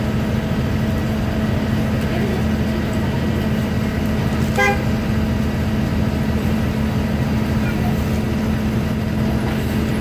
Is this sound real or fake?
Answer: real